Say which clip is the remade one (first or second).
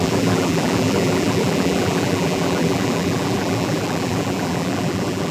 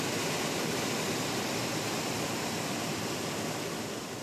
first